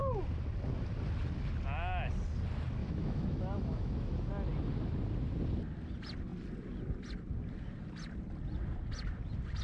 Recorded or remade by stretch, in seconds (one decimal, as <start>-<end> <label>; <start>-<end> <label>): 0.0-2.8 recorded; 2.8-4.3 remade; 4.3-9.6 recorded